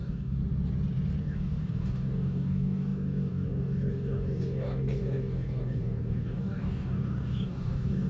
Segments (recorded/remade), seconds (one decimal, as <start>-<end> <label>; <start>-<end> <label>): 0.0-0.4 remade; 0.4-1.2 recorded; 1.2-8.1 remade